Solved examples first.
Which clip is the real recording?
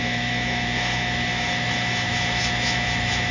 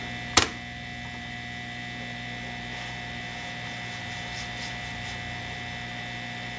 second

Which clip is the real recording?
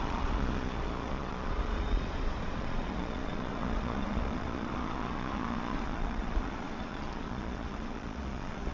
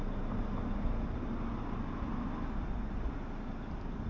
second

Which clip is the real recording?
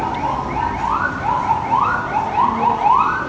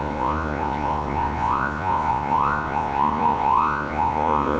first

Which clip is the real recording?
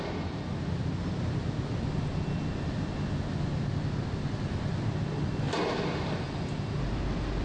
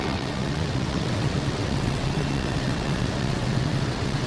first